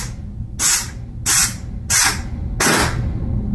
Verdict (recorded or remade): recorded